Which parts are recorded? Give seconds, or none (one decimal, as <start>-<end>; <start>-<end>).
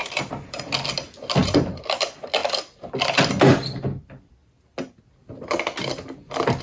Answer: 0.6-1.4; 2.0-6.6